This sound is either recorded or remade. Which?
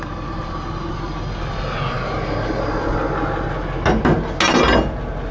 recorded